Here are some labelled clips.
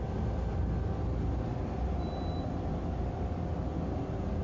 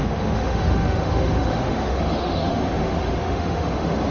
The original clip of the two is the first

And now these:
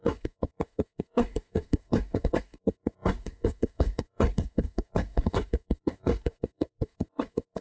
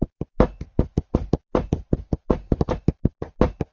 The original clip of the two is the second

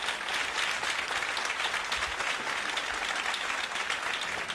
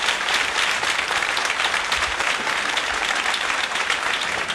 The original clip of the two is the first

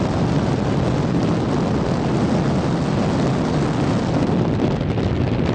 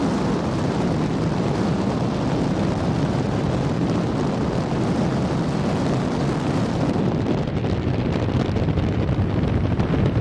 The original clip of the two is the first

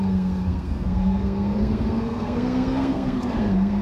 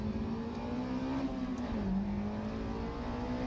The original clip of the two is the second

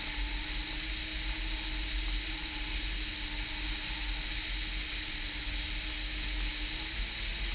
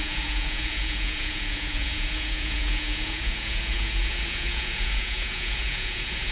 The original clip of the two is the first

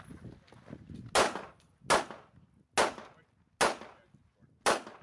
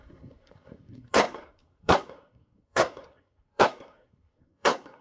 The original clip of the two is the first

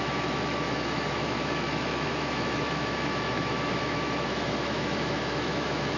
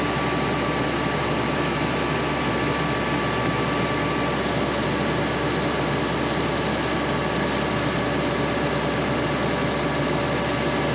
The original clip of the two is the second